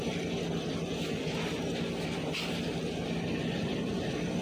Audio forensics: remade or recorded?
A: recorded